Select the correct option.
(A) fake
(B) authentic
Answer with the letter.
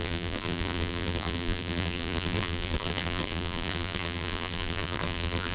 A